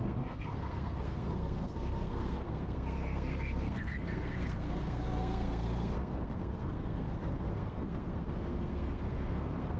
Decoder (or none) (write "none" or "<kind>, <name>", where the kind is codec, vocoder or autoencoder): codec, SNAC